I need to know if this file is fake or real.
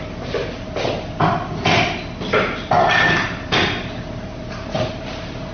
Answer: real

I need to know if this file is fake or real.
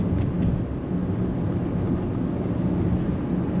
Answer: real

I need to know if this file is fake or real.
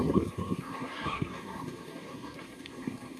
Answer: fake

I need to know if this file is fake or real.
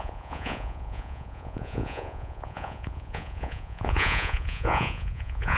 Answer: fake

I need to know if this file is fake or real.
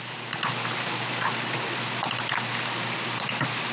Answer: real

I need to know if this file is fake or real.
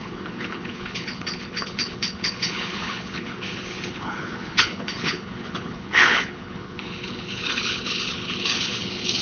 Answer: fake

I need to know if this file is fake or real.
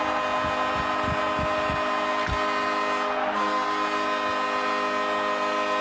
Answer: real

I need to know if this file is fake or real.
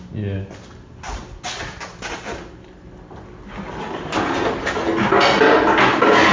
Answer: real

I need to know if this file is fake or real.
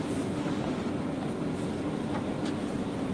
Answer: real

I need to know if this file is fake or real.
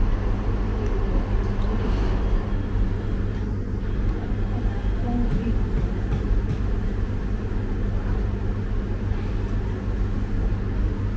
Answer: real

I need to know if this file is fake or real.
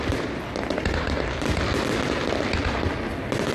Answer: real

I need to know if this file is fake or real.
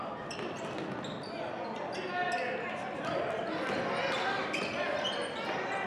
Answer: real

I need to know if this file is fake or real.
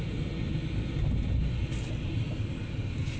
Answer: real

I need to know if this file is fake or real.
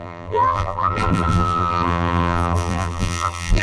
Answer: fake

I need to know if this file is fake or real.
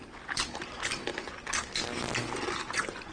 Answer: real